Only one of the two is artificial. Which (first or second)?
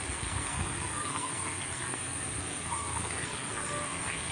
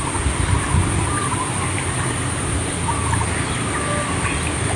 first